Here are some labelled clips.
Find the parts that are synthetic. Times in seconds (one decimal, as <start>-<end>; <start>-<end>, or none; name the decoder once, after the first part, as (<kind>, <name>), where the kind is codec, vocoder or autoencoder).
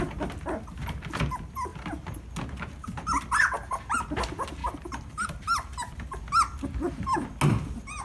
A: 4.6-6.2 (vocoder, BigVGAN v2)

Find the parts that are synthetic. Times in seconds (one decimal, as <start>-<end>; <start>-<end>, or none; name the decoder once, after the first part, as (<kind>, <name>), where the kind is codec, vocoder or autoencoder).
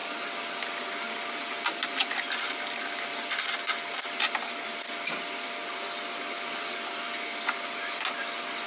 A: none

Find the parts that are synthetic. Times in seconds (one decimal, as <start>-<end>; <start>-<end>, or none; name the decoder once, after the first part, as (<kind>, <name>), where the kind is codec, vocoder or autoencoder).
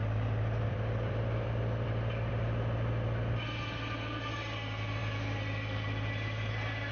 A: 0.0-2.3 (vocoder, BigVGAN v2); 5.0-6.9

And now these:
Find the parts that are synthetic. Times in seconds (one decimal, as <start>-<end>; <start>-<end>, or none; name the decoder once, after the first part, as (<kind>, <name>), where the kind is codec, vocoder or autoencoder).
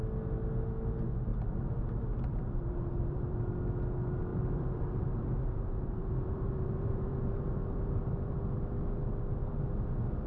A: 1.3-3.5 (vocoder, BigVGAN v2); 4.3-8.3